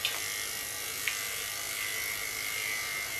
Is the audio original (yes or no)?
yes